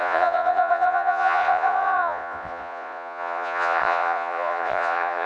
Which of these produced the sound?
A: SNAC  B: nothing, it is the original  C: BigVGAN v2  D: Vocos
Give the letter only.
D